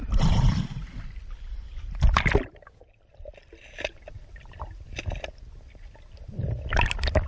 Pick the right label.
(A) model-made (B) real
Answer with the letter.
B